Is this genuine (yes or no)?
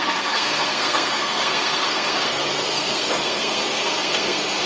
no